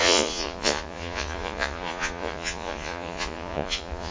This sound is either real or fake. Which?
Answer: fake